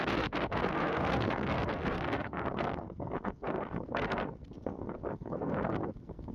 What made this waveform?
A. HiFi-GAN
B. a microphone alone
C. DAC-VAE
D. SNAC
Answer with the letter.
D